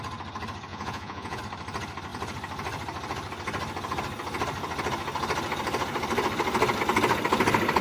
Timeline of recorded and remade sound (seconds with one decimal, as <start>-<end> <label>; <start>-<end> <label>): 0.0-0.7 recorded; 0.7-1.4 remade; 1.4-7.8 recorded

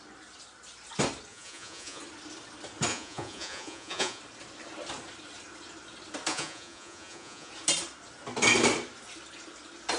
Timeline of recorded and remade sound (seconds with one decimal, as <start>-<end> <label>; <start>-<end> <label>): 0.0-1.3 recorded; 1.3-2.0 remade; 2.0-2.9 recorded; 2.9-4.2 remade; 4.2-6.3 recorded; 6.3-7.5 remade; 7.5-10.0 recorded

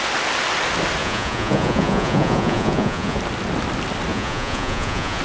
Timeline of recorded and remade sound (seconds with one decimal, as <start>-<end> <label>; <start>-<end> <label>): 0.0-1.0 recorded; 1.0-3.2 remade; 3.2-4.1 recorded; 4.1-5.2 remade

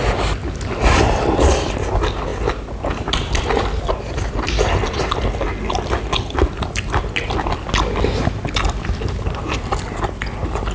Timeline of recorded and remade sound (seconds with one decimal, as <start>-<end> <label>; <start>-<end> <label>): 0.0-10.7 recorded

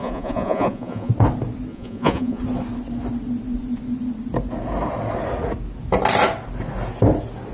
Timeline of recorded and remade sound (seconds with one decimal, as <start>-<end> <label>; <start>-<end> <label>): 0.0-1.1 remade; 1.1-1.7 recorded; 1.7-2.4 remade; 2.4-7.5 recorded

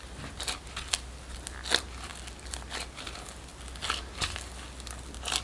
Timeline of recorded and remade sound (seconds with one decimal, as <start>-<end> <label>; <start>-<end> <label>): 0.0-5.4 recorded

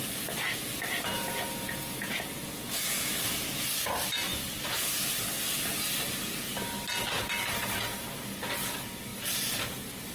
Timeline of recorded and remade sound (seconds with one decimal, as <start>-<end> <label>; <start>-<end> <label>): 0.0-1.1 recorded; 1.1-3.1 remade; 3.1-10.1 recorded